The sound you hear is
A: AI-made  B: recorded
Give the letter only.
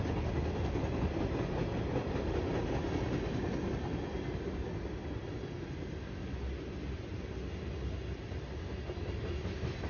B